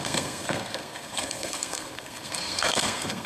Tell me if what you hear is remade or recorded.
remade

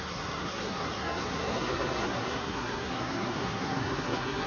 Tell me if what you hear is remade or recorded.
remade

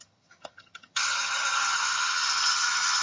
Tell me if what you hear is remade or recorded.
remade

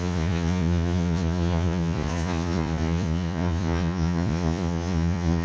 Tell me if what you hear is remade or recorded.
remade